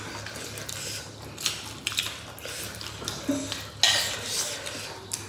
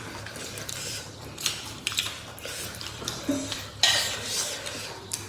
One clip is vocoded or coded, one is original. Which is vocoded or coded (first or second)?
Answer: second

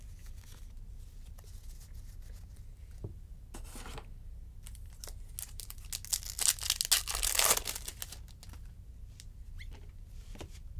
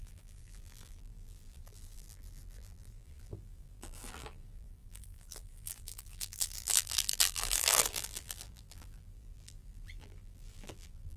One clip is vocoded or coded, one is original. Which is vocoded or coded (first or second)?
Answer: second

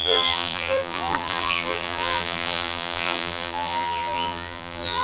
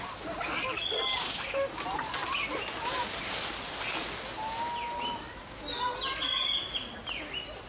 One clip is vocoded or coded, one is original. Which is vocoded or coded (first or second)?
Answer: first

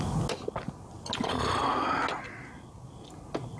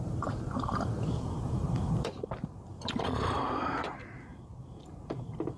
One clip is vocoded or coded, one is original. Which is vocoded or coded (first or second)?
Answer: second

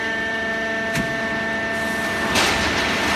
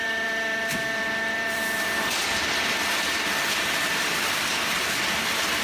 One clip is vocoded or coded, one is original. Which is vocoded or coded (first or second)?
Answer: second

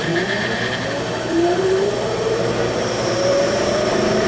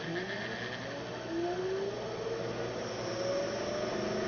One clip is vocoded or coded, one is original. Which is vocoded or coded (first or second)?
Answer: first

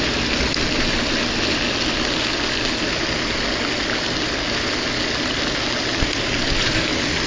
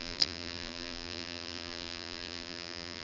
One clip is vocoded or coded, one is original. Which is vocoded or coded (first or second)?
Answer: second